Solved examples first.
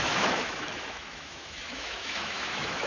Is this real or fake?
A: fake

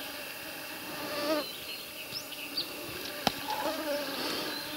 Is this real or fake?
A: real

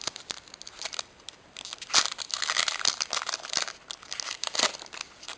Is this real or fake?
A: real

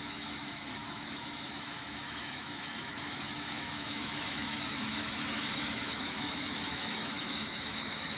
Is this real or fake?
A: fake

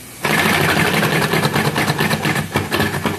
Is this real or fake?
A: real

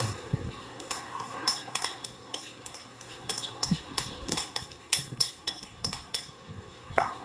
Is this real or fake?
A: fake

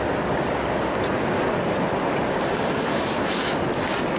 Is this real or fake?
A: real